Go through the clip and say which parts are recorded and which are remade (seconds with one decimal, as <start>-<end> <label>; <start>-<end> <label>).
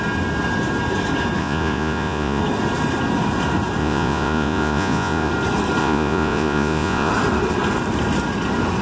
0.0-1.4 recorded; 1.4-2.4 remade; 2.4-3.8 recorded; 3.8-5.3 remade; 5.3-5.8 recorded; 5.8-7.1 remade; 7.1-8.8 recorded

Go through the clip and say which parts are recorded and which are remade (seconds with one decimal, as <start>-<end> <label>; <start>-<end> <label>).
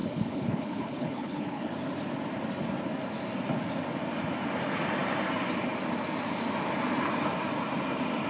0.0-1.7 remade; 1.7-8.3 recorded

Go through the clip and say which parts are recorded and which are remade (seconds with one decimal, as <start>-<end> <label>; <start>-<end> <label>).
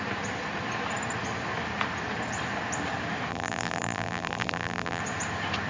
0.0-3.3 recorded; 3.3-5.0 remade; 5.0-5.7 recorded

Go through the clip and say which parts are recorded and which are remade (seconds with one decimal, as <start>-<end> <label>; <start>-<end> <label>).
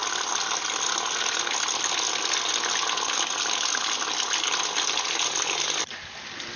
0.0-6.6 recorded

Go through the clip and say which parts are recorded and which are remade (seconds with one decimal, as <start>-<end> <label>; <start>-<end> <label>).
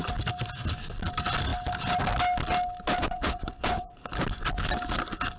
0.0-3.0 recorded; 3.0-4.0 remade; 4.0-5.4 recorded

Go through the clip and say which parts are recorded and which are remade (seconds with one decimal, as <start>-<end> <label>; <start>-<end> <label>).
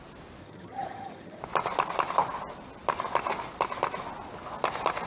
0.0-0.4 recorded; 0.4-1.4 remade; 1.4-5.1 recorded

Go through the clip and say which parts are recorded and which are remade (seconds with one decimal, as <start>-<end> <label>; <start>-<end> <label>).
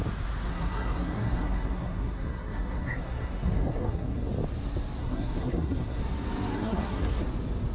0.0-0.5 recorded; 0.5-4.3 remade; 4.3-5.0 recorded; 5.0-6.0 remade; 6.0-6.5 recorded; 6.5-7.2 remade; 7.2-7.7 recorded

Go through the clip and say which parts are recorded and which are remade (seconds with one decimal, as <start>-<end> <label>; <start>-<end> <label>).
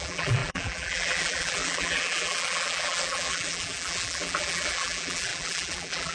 0.0-6.1 remade